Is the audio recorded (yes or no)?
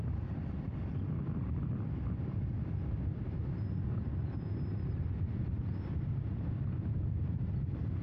yes